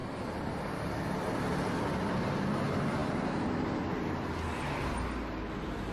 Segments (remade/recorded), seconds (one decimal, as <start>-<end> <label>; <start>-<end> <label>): 0.0-0.6 remade; 0.6-5.9 recorded